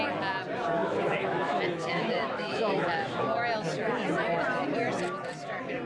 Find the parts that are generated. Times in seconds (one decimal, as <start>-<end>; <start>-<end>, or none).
0.8-3.2